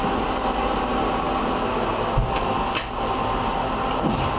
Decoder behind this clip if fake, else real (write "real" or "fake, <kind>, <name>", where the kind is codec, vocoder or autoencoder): real